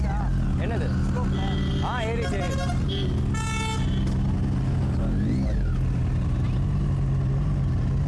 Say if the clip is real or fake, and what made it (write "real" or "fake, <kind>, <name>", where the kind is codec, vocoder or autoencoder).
real